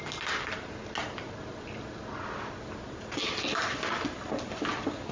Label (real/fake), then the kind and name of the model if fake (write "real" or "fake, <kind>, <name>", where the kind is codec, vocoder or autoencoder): real